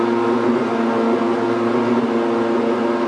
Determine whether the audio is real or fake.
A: real